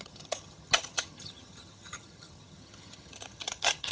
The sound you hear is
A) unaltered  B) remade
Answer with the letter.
B